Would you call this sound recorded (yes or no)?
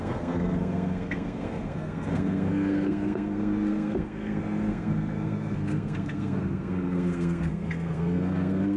no